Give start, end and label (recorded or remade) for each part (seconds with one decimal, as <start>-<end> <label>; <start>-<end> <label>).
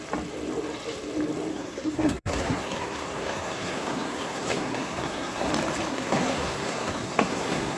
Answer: 0.0-1.5 recorded; 1.5-5.5 remade; 5.5-5.9 recorded; 5.9-7.8 remade